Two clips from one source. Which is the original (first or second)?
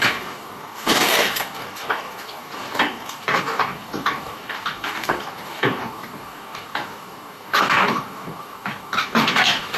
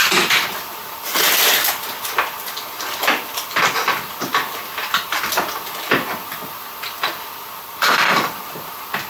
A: second